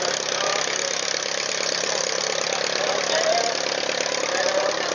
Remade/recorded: recorded